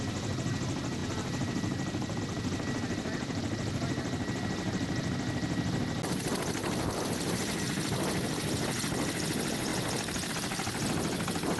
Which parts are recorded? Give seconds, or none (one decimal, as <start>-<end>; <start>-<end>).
0.0-1.0; 2.2-6.6; 7.6-11.6